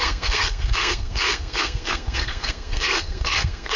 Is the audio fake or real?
fake